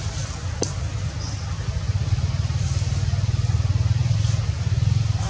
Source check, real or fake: real